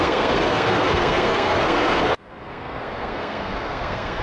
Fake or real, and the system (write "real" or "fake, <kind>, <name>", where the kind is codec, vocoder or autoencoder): fake, codec, SNAC